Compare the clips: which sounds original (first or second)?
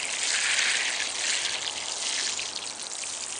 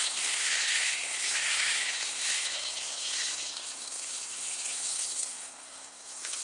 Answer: first